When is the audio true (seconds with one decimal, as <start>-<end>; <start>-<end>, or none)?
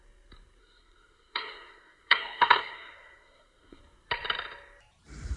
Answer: 0.0-0.6; 3.8-5.4